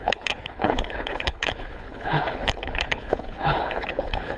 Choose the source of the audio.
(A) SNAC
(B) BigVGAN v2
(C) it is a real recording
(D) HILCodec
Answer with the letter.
D